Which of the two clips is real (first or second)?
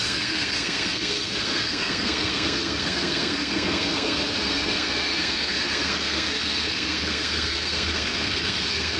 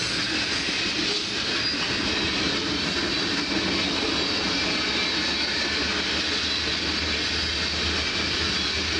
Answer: second